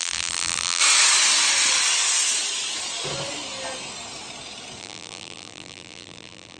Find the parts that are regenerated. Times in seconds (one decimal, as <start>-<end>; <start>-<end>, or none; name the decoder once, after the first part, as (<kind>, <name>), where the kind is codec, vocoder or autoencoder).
0.0-0.8 (vocoder, BigVGAN v2); 4.8-6.6